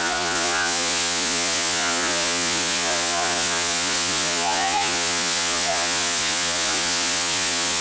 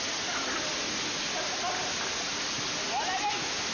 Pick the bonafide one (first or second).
second